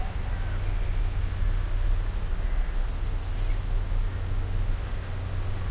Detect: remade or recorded recorded